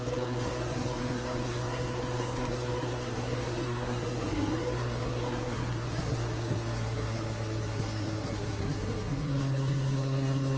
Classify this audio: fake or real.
fake